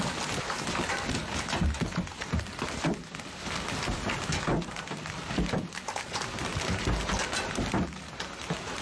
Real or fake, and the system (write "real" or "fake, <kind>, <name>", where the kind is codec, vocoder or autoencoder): real